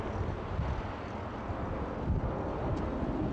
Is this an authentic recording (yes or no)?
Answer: yes